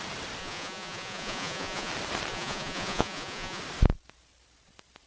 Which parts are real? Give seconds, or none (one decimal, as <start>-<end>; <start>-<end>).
0.0-0.4; 1.9-2.3; 3.6-5.1